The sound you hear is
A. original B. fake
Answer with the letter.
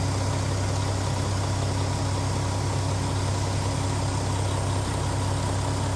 A